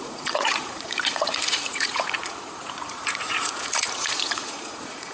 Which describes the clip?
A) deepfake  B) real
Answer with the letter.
A